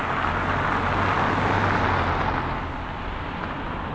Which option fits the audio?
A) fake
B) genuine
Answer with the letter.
B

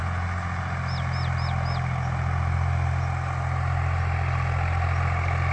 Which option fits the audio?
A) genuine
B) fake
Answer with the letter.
A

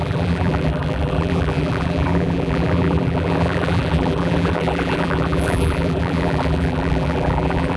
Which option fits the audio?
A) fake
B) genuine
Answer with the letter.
A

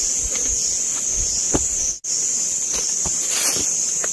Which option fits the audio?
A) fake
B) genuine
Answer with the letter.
B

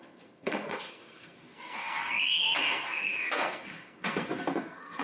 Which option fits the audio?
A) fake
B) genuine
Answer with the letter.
A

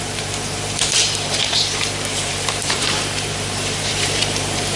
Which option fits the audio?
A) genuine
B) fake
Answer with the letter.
B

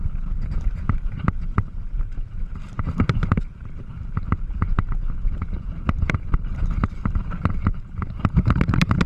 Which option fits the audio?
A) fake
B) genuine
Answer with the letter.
A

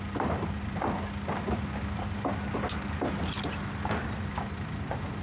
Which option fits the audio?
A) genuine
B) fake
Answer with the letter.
A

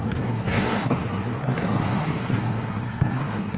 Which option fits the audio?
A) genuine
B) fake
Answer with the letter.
B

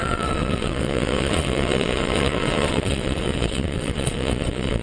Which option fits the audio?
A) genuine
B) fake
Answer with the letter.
B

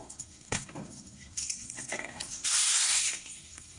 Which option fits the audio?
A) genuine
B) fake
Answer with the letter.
B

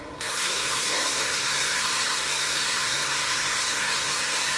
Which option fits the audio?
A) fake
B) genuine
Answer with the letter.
A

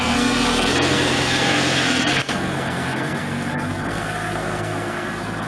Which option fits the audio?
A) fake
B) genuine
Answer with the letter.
A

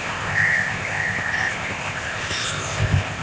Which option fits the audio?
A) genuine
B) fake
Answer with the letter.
B